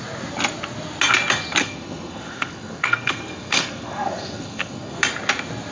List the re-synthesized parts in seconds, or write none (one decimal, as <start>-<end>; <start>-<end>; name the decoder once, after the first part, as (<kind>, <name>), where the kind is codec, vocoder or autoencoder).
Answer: 1.6-5.0 (codec, SNAC)